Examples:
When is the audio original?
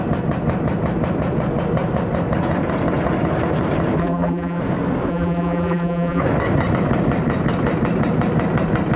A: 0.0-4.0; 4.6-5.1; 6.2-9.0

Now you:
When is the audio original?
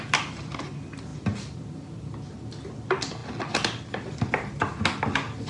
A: 0.0-1.1; 1.6-5.5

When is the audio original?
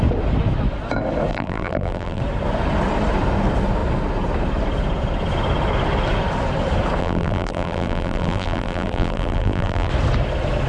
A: 0.0-1.3; 2.2-7.0; 9.9-10.7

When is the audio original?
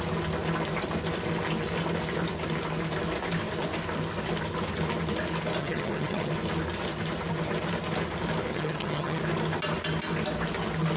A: 0.0-5.6; 6.3-8.5; 9.2-11.0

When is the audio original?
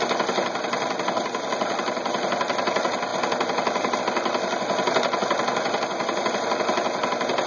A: 0.0-7.5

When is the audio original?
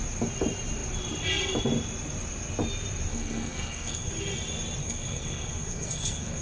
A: 0.0-3.1; 4.1-4.8